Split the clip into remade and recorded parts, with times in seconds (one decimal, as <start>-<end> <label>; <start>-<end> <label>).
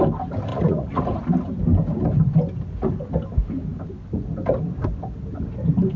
0.0-0.5 recorded; 0.5-1.0 remade; 1.0-6.0 recorded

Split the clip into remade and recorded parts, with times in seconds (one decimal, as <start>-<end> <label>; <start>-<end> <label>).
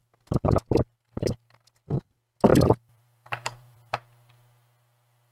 0.0-2.5 recorded; 2.5-3.9 remade; 3.9-5.3 recorded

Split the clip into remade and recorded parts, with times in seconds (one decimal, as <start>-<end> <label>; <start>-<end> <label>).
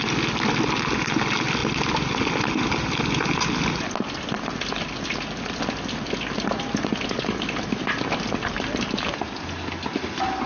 0.0-10.5 recorded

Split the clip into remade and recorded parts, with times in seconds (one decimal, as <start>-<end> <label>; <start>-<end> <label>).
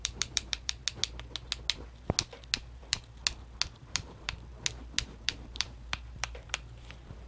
0.0-0.8 remade; 0.8-2.8 recorded; 2.8-3.2 remade; 3.2-3.8 recorded; 3.8-4.5 remade; 4.5-5.1 recorded; 5.1-7.3 remade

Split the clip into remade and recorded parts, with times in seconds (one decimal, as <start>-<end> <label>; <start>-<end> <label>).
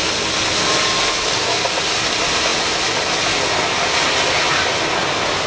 0.0-5.5 recorded